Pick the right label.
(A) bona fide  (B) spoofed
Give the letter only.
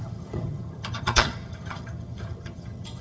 B